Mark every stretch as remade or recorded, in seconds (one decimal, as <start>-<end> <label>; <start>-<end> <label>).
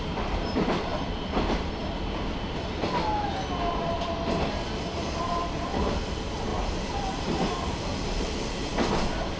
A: 0.0-0.9 remade; 0.9-5.2 recorded; 5.2-9.4 remade